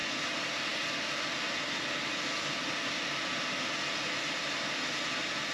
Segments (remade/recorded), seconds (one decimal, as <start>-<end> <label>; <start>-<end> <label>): 0.0-5.5 recorded